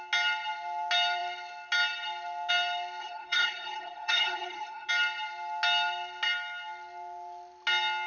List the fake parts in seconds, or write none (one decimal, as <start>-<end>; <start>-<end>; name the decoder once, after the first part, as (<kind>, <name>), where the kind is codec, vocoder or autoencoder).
3.0-4.9 (codec, HILCodec)